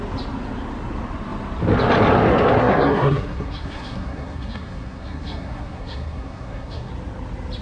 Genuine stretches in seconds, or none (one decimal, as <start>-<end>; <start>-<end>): 0.0-2.6; 6.9-7.6